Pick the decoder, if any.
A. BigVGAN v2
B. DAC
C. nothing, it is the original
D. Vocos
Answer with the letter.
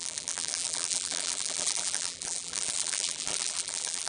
A